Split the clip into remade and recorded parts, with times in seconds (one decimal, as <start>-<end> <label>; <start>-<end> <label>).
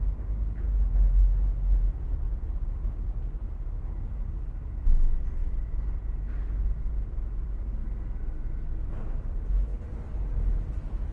0.0-11.1 recorded